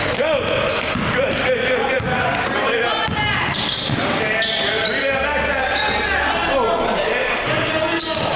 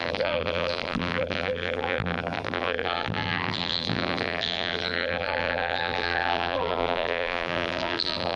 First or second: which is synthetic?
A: second